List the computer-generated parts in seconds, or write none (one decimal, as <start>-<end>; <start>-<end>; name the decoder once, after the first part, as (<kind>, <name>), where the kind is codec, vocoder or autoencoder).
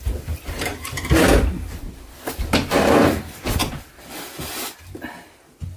0.0-3.6 (vocoder, BigVGAN v2)